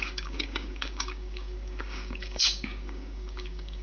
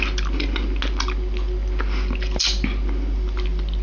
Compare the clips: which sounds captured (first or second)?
second